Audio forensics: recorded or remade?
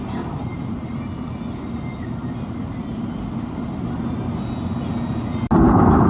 recorded